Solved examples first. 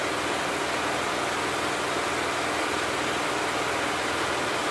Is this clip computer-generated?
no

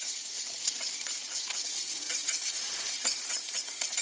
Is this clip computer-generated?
yes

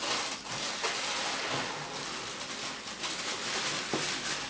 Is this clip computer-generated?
no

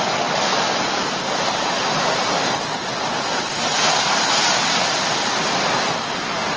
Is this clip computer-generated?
no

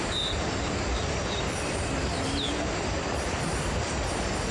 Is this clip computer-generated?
no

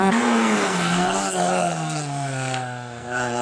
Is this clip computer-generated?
yes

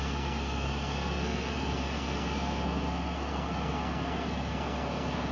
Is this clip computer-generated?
yes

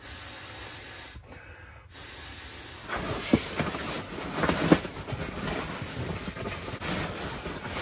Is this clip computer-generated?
no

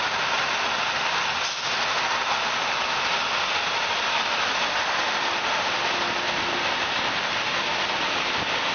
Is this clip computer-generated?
no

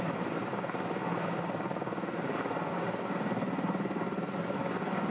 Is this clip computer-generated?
no